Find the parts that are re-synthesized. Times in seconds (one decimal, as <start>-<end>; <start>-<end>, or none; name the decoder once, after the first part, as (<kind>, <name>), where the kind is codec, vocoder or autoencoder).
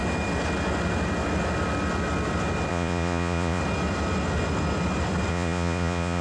2.7-3.6 (vocoder, Vocos); 5.3-6.2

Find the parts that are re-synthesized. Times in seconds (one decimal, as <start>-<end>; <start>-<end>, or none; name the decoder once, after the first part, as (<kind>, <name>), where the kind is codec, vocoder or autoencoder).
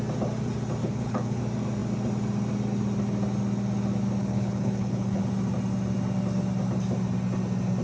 0.8-1.4 (codec, HILCodec); 4.2-5.2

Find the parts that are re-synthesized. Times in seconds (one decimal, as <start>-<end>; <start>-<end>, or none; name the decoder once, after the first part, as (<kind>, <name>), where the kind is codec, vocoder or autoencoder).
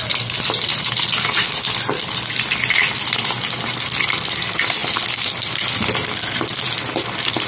none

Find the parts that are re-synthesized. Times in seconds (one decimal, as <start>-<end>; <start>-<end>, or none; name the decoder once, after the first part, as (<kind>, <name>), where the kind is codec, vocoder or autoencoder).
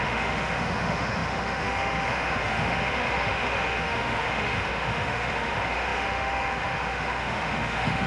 0.0-8.1 (autoencoder, DAC-VAE)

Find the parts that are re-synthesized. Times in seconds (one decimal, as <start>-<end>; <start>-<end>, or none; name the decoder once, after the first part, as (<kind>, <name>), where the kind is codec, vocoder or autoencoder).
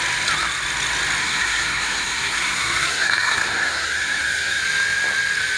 1.2-4.6 (codec, SNAC)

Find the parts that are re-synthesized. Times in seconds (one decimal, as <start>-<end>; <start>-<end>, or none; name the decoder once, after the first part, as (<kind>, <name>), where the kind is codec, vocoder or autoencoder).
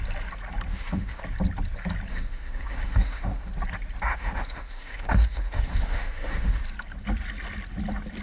0.7-1.2 (autoencoder, DAC-VAE); 2.1-3.5; 4.1-6.6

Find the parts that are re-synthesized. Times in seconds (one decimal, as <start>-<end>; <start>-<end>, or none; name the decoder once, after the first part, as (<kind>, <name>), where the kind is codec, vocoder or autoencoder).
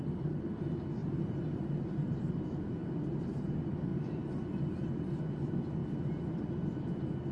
1.0-2.3 (vocoder, BigVGAN v2); 2.8-3.5; 3.9-4.4